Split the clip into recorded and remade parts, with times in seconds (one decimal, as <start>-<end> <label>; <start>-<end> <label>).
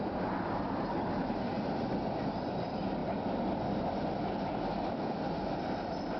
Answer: 0.0-6.2 recorded